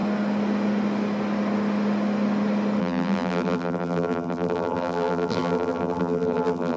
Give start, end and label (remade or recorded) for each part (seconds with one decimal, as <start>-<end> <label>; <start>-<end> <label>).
0.0-2.8 recorded; 2.8-6.8 remade